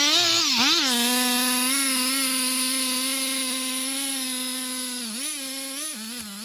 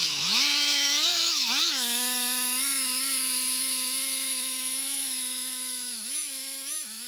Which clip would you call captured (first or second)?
first